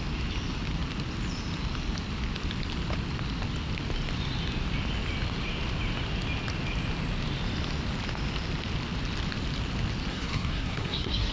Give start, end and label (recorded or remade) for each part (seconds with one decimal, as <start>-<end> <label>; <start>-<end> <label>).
0.0-10.1 recorded; 10.1-11.3 remade